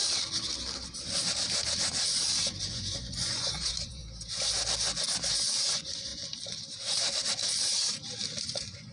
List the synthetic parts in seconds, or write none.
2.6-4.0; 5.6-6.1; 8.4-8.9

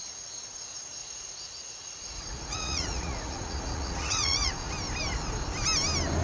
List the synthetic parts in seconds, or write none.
1.0-4.7

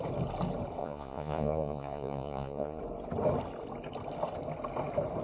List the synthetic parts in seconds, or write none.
0.8-2.8